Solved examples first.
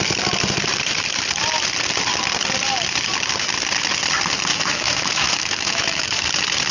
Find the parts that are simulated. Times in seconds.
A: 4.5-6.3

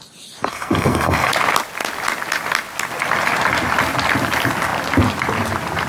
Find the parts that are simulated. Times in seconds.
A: 0.5-1.3

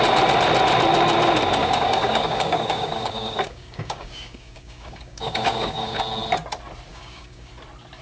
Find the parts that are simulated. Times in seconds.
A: 1.6-6.0; 6.9-7.5